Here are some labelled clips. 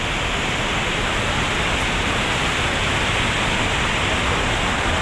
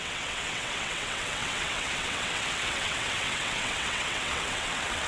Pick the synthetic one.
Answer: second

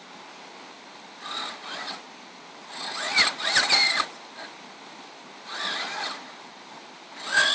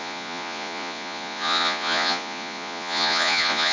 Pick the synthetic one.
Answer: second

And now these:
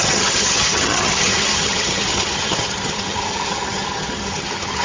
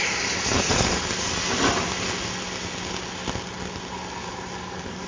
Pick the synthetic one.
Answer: first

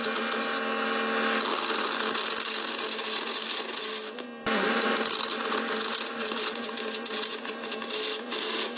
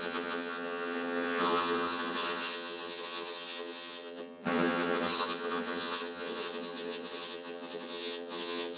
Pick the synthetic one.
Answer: second